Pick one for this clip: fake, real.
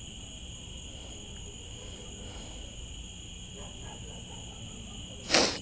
real